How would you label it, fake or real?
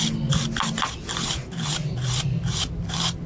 real